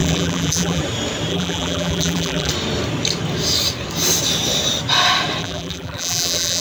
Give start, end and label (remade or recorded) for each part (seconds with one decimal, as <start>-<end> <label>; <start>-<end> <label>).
0.0-0.8 remade; 0.8-1.3 recorded; 1.3-2.5 remade; 2.5-5.4 recorded; 5.4-6.6 remade

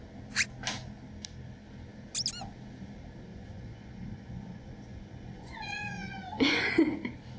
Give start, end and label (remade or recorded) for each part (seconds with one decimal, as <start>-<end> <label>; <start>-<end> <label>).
0.0-3.3 recorded; 3.3-6.7 remade; 6.7-7.4 recorded

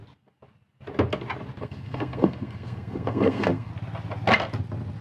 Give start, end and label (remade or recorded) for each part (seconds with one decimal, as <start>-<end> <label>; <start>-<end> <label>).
0.0-1.6 recorded; 1.6-3.7 remade; 3.7-5.0 recorded

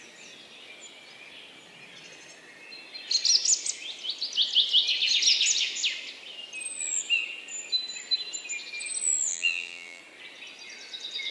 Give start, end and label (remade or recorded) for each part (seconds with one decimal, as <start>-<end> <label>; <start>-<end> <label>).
0.0-9.3 recorded; 9.3-10.0 remade; 10.0-11.3 recorded

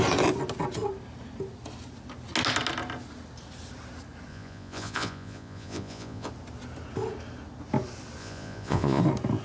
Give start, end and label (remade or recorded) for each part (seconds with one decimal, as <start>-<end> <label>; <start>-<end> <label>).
0.0-4.3 recorded; 4.3-6.3 remade; 6.3-8.2 recorded; 8.2-9.0 remade; 9.0-9.4 recorded